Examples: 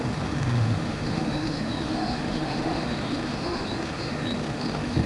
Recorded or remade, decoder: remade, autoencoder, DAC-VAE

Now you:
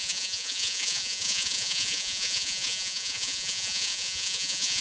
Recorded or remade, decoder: remade, vocoder, Vocos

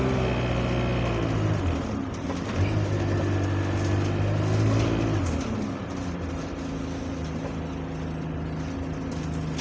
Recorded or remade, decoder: recorded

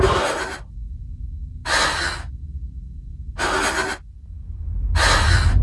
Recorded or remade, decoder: recorded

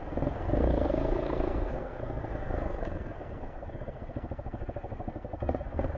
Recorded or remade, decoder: remade, codec, SNAC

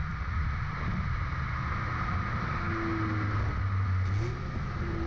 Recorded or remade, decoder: recorded